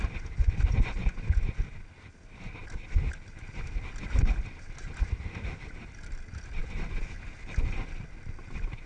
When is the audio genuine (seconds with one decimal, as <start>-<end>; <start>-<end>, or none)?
0.0-8.9